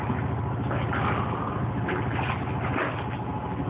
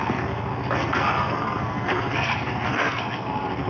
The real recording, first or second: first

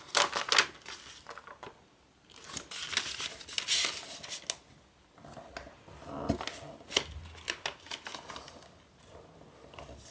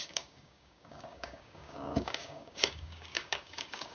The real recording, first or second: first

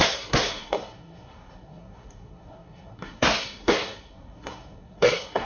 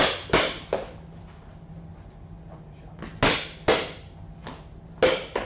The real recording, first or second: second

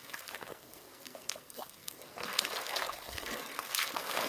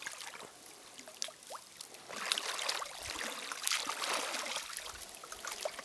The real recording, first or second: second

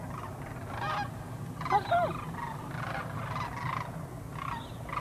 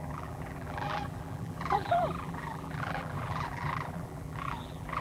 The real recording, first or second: first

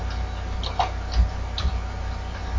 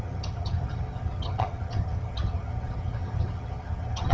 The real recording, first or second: first